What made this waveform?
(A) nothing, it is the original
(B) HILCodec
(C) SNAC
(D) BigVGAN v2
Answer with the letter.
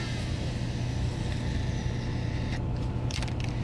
A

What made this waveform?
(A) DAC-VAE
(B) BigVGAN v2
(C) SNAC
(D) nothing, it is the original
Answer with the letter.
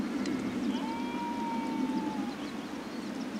D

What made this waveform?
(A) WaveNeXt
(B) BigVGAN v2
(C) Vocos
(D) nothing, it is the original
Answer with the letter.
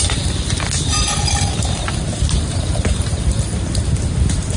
D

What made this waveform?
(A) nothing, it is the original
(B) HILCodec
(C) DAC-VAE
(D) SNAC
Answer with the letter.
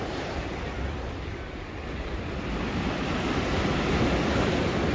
A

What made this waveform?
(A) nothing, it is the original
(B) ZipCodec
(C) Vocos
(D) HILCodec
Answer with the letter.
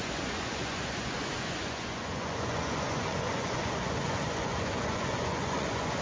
C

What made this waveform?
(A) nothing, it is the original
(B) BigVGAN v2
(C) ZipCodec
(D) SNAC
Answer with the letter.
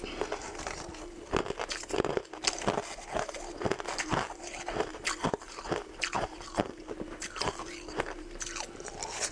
A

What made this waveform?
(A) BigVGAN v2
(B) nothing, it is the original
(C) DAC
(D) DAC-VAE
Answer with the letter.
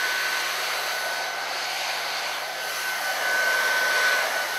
B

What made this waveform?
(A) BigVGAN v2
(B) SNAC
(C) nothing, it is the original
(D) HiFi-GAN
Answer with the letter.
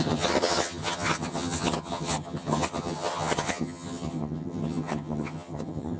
D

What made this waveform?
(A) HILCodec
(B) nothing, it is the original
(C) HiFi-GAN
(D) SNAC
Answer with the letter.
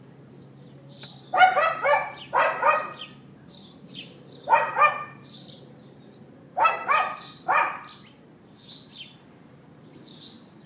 B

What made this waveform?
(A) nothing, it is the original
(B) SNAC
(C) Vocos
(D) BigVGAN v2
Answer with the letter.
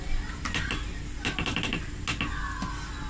A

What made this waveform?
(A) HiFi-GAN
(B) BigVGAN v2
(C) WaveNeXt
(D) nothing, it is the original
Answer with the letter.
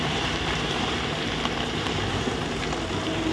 B